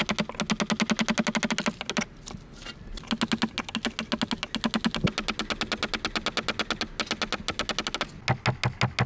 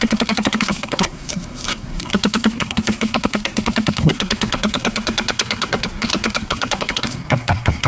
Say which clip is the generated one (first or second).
second